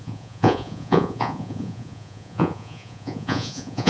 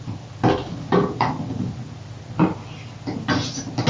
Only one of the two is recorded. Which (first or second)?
second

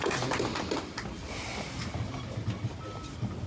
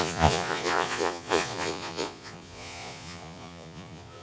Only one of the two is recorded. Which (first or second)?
first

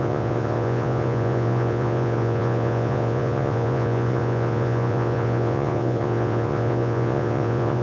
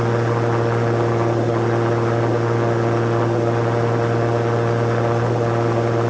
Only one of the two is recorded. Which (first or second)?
second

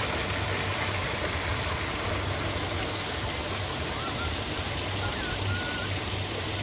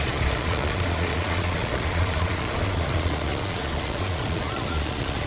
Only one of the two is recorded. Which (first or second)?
first